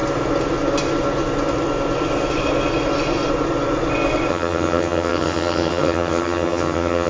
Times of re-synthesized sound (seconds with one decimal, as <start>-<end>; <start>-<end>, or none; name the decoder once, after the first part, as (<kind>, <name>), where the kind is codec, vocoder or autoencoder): 4.3-7.1 (vocoder, HiFi-GAN)